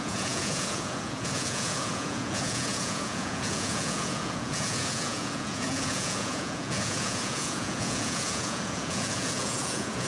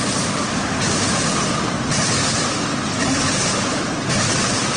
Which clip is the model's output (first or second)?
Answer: first